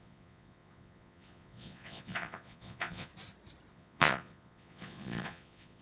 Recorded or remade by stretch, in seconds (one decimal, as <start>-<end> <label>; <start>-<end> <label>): 0.0-3.1 remade; 3.1-3.7 recorded; 3.7-5.8 remade

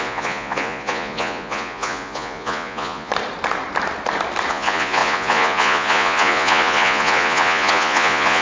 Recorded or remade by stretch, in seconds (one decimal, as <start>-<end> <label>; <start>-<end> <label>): 0.0-3.1 remade; 3.1-4.5 recorded; 4.5-8.4 remade

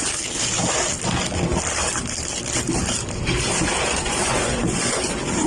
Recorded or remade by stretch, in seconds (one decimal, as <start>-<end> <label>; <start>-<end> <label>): 0.0-3.9 recorded; 3.9-5.1 remade; 5.1-5.5 recorded

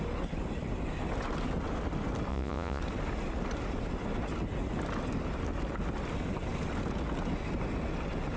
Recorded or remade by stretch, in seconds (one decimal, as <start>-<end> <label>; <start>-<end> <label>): 0.0-2.3 recorded; 2.3-2.8 remade; 2.8-8.4 recorded

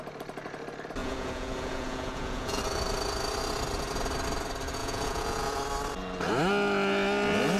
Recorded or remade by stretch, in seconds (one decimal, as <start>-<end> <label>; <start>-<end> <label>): 0.0-1.0 recorded; 1.0-2.6 remade; 2.6-4.8 recorded; 4.8-5.6 remade; 5.6-7.6 recorded

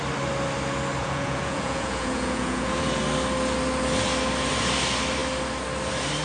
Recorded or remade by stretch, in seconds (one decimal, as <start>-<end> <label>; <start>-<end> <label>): 0.0-1.0 recorded; 1.0-3.0 remade; 3.0-6.2 recorded

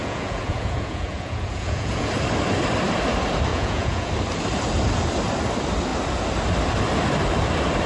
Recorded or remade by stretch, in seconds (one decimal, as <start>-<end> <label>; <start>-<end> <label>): 0.0-2.1 remade; 2.1-3.5 recorded; 3.5-4.1 remade; 4.1-7.9 recorded

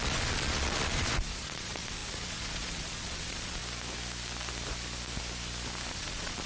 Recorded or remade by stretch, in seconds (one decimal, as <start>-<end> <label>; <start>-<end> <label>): 0.0-3.6 remade; 3.6-5.9 recorded; 5.9-6.5 remade